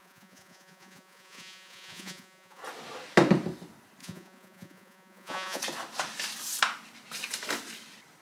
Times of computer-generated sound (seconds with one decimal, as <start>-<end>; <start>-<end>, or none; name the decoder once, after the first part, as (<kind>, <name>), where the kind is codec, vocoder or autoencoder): 0.0-2.6 (vocoder, Vocos); 4.0-5.6